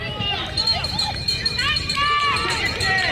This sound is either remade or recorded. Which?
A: remade